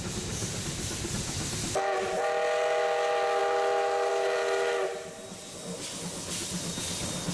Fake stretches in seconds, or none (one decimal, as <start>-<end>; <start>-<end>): none